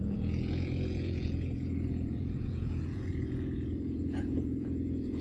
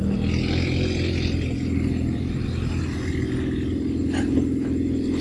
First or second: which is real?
second